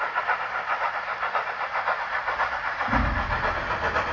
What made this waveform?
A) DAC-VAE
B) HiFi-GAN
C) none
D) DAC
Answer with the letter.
C